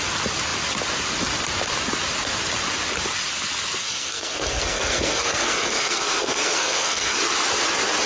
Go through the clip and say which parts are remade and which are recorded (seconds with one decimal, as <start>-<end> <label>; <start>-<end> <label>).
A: 0.0-3.8 recorded; 3.8-7.2 remade; 7.2-8.1 recorded